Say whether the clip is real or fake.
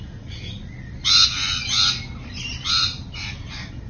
real